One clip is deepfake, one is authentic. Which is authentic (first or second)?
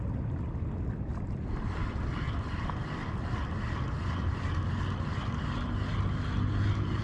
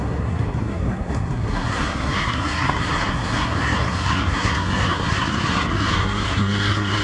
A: first